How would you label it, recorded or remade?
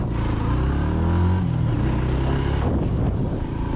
recorded